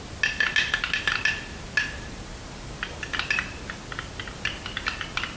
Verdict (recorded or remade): recorded